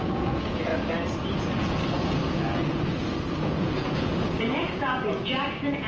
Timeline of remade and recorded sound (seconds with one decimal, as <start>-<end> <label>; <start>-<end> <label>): 0.0-0.7 remade; 0.7-1.4 recorded; 1.4-5.9 remade